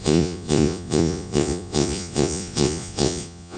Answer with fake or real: fake